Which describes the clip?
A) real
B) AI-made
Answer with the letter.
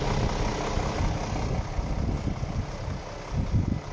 A